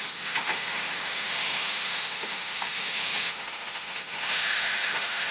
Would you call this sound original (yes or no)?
no